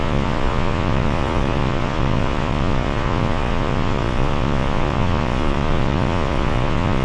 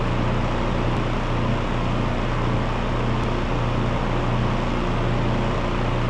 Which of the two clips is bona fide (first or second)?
second